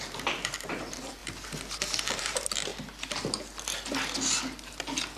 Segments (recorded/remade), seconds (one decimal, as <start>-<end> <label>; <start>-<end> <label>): 0.0-1.2 remade; 1.2-2.2 recorded; 2.2-2.7 remade; 2.7-5.2 recorded